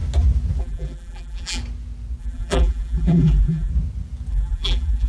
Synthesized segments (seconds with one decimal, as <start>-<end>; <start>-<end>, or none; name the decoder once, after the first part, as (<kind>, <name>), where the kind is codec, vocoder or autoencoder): 0.6-1.6 (vocoder, BigVGAN v2); 2.2-3.7; 4.3-5.1